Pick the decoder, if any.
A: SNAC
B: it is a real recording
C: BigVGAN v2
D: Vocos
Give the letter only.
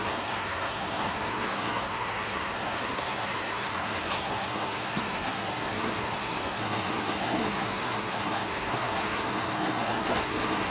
A